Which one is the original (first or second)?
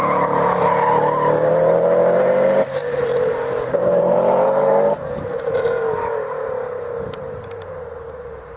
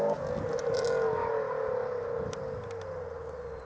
second